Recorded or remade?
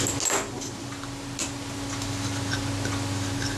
recorded